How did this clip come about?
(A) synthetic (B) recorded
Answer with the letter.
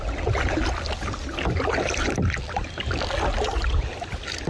B